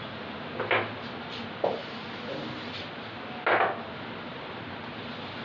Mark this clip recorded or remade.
recorded